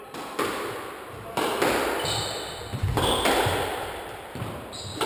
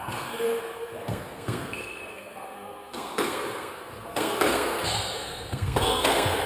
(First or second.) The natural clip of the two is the first